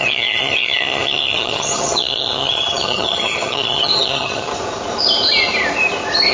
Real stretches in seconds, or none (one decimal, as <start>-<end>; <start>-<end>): 4.5-6.3

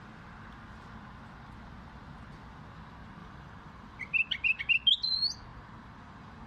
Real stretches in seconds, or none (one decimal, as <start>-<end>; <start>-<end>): 0.0-3.2; 4.6-5.5

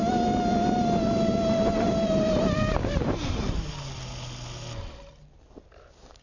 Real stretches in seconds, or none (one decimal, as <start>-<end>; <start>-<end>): 3.7-6.2

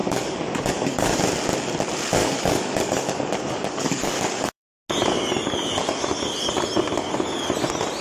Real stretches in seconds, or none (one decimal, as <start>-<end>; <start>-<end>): 1.2-2.2; 4.7-8.0

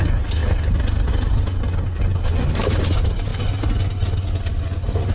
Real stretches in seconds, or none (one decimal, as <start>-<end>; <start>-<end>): 0.0-5.1

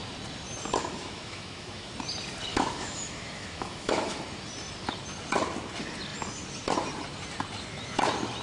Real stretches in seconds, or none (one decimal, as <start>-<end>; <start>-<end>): 0.0-0.8; 1.9-2.5; 4.2-8.4

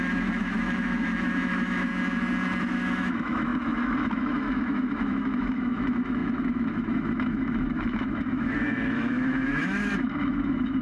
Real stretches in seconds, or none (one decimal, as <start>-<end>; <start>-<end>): 1.9-2.6

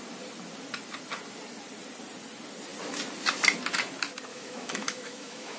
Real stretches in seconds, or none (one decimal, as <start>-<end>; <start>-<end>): 0.0-4.3